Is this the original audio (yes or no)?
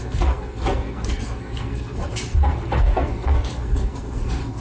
no